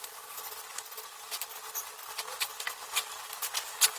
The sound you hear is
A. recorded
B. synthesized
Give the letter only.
A